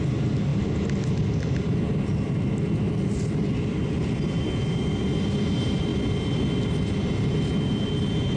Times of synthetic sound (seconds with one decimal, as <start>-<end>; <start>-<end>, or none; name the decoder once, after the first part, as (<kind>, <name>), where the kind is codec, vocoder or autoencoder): none